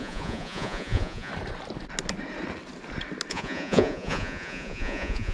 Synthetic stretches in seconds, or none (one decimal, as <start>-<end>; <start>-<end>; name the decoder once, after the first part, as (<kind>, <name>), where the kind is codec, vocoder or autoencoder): 0.0-1.3 (vocoder, Vocos); 3.3-5.3